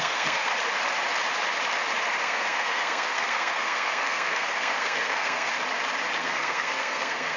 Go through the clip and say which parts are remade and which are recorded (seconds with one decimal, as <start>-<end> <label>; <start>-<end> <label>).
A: 0.0-0.5 remade; 0.5-2.2 recorded; 2.2-5.5 remade; 5.5-6.2 recorded; 6.2-7.4 remade